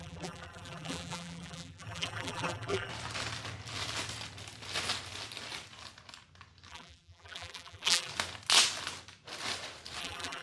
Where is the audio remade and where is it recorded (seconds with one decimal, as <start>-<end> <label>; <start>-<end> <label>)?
0.0-2.9 remade; 2.9-6.7 recorded; 6.7-8.1 remade; 8.1-10.0 recorded; 10.0-10.4 remade